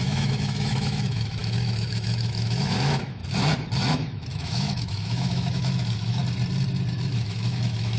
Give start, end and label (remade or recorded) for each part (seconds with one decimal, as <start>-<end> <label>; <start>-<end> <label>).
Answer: 0.0-3.2 remade; 3.2-3.9 recorded; 3.9-6.2 remade; 6.2-6.9 recorded; 6.9-8.0 remade